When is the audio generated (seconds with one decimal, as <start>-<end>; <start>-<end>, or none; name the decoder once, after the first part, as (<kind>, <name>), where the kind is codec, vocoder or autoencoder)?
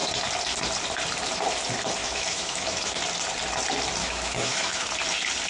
2.0-3.0 (autoencoder, DAC-VAE); 4.0-4.9